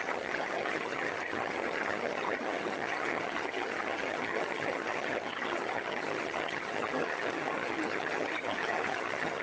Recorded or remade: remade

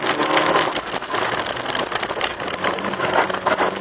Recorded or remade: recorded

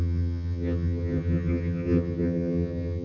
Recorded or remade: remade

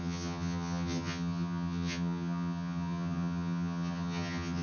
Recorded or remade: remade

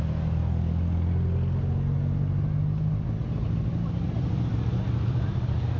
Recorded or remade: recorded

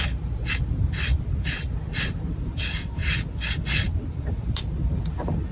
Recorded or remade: recorded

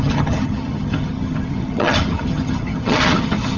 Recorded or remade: remade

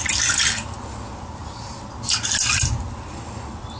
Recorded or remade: recorded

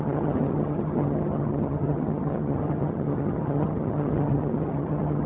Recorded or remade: remade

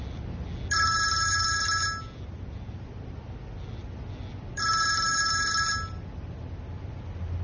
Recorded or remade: recorded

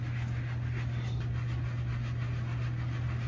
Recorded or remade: recorded